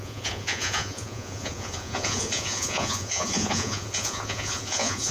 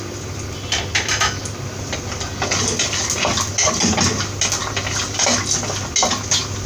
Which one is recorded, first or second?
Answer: second